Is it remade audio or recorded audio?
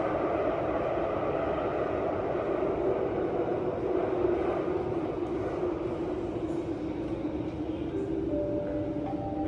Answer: recorded